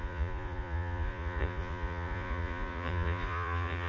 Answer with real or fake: fake